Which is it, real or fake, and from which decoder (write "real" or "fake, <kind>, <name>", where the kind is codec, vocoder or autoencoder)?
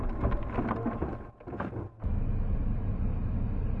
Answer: real